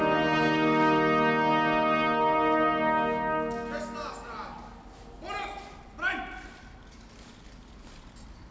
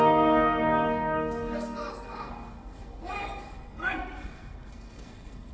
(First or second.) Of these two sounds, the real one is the first